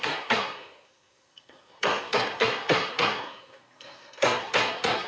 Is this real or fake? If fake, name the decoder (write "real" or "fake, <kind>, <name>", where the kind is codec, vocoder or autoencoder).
fake, codec, SNAC